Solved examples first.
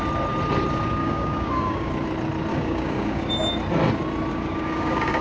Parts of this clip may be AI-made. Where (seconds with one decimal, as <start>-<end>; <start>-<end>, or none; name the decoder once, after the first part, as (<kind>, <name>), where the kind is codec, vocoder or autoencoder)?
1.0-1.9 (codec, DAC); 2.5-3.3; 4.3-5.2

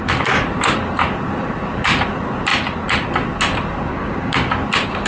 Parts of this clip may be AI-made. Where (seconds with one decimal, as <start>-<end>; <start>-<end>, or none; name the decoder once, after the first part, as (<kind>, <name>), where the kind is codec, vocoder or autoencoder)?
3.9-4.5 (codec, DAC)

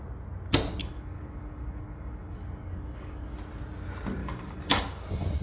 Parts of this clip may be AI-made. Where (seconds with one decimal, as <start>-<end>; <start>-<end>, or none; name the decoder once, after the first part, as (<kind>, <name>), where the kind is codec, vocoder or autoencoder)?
0.8-3.4 (codec, DAC); 4.2-4.8

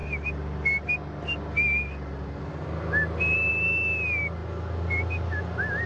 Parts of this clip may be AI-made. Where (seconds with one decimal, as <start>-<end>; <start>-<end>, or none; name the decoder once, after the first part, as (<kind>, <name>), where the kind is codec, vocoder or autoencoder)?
none

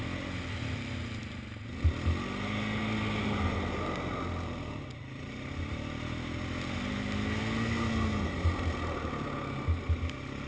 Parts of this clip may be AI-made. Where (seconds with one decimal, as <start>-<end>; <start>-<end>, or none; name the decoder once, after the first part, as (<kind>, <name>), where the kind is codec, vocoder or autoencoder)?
none